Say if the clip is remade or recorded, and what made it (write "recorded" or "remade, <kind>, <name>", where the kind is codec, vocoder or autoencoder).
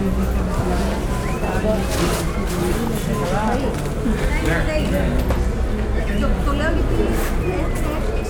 recorded